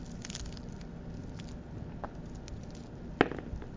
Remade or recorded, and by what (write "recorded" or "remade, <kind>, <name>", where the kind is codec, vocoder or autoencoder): recorded